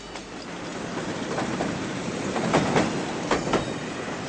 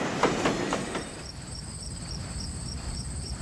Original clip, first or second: first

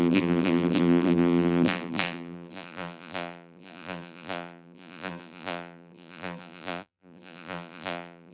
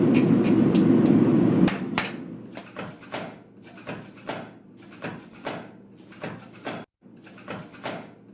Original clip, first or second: second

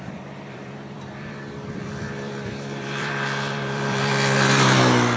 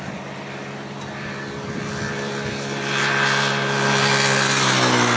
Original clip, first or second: second